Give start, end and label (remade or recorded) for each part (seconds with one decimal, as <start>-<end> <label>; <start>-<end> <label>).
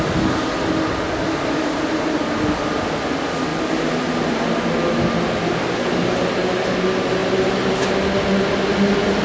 0.0-9.2 recorded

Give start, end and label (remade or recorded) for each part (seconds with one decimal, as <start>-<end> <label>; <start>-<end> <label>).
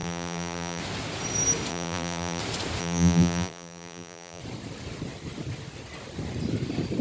0.0-0.8 remade; 0.8-1.7 recorded; 1.7-2.4 remade; 2.4-2.8 recorded; 2.8-4.4 remade; 4.4-7.0 recorded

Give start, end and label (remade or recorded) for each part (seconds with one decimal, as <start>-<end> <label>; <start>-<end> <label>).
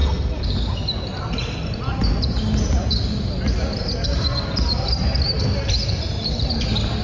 0.0-7.0 recorded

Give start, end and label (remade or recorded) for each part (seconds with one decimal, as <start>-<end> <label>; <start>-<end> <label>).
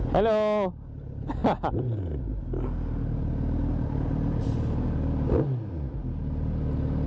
0.0-7.1 recorded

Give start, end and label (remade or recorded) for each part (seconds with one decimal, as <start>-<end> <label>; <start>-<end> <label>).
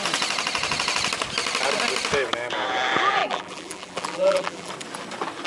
0.0-3.2 recorded; 3.2-4.7 remade; 4.7-5.5 recorded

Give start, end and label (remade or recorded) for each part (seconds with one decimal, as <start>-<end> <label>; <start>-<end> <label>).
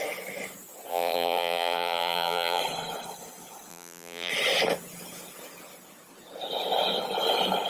0.0-0.9 recorded; 0.9-2.6 remade; 2.6-3.7 recorded; 3.7-4.3 remade; 4.3-7.7 recorded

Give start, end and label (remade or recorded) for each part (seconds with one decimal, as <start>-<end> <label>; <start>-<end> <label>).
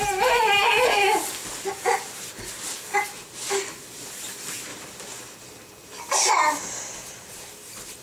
0.0-4.7 recorded; 4.7-6.3 remade; 6.3-8.0 recorded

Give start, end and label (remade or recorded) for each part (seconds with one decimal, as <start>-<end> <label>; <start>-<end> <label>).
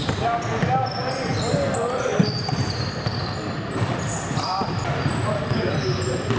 0.0-6.4 recorded